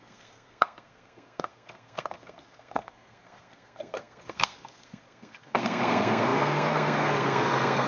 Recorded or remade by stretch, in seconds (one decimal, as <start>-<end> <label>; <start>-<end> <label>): 0.0-7.9 remade